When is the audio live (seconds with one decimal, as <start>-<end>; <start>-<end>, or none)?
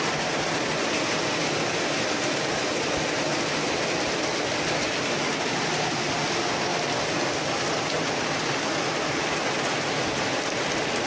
0.0-11.1